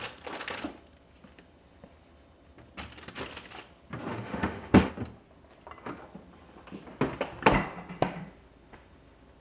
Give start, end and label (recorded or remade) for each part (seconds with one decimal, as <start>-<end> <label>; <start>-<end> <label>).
0.0-4.1 recorded; 4.1-4.9 remade; 4.9-9.4 recorded